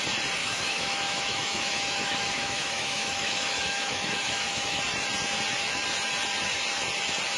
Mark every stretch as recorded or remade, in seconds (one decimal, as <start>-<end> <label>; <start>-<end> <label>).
0.0-0.4 recorded; 0.4-4.8 remade; 4.8-7.4 recorded